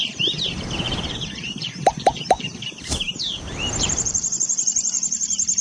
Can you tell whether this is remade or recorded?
remade